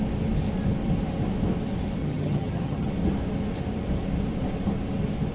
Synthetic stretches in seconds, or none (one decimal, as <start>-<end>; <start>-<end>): 2.0-2.9